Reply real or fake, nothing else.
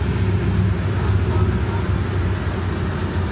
real